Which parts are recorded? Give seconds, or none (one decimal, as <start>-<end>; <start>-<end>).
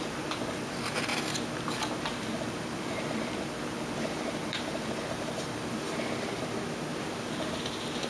0.0-8.1